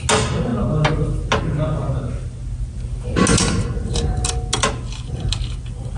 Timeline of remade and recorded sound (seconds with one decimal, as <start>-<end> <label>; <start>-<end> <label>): 0.0-6.0 recorded